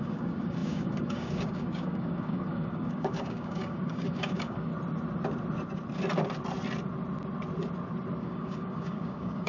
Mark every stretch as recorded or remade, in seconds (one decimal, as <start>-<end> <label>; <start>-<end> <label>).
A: 0.0-4.7 remade; 4.7-8.2 recorded; 8.2-9.5 remade